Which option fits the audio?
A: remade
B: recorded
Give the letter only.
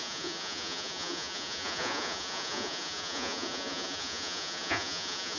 A